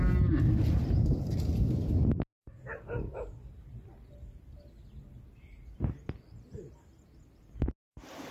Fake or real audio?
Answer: real